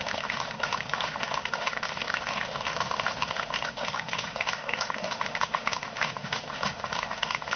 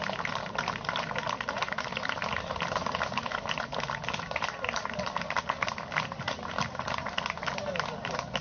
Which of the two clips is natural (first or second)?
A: second